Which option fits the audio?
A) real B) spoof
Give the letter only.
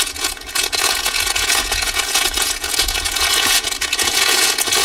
B